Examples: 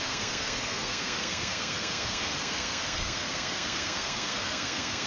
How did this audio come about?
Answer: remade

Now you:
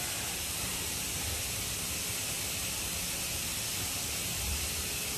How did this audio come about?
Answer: remade